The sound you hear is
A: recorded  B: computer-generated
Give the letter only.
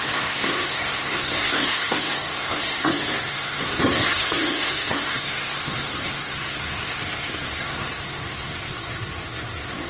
B